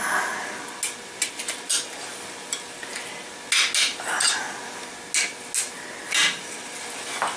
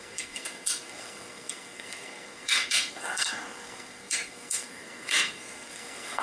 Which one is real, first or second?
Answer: first